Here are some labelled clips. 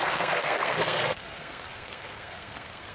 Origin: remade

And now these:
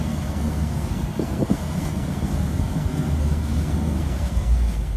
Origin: remade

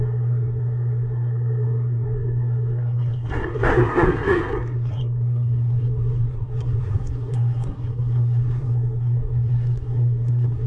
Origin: remade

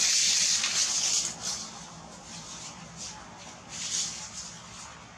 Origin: recorded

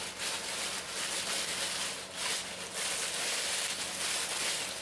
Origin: recorded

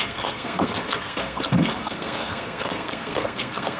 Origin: remade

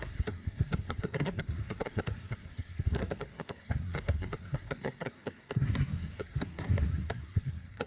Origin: remade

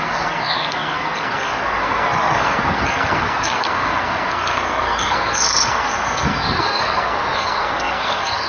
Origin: remade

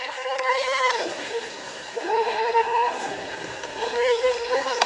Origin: remade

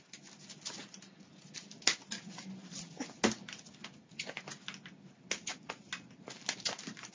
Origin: recorded